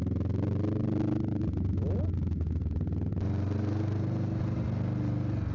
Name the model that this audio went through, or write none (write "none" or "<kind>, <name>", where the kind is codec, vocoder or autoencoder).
none